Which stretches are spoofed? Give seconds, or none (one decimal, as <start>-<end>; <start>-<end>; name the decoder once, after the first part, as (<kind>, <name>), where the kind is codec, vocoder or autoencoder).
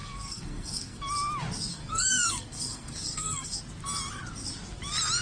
0.0-1.0 (codec, SNAC); 1.7-3.6